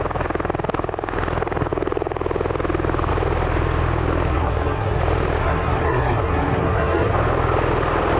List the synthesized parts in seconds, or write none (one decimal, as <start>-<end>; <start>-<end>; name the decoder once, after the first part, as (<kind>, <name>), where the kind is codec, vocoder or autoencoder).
4.3-5.0 (codec, SNAC); 5.4-7.1